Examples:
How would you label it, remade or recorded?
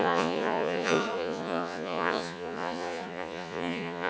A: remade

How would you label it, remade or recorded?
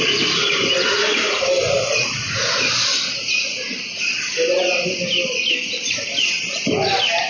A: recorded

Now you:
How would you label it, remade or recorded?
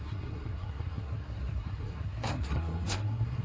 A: remade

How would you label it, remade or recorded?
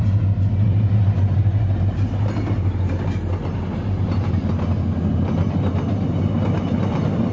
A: recorded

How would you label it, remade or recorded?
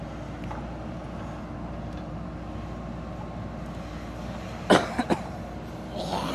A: recorded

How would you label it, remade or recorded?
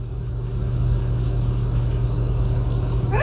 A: remade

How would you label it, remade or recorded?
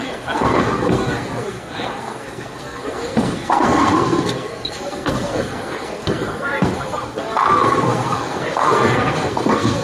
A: remade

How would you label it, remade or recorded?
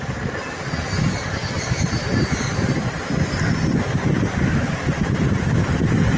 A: recorded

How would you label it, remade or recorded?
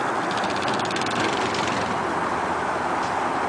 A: recorded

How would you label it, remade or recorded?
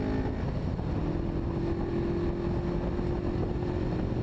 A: recorded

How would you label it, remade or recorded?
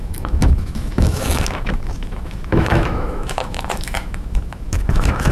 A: remade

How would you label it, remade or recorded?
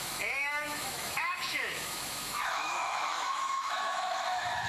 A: remade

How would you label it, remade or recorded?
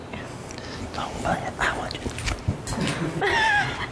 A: recorded